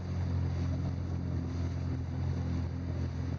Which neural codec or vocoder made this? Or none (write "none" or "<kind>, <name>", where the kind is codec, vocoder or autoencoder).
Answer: none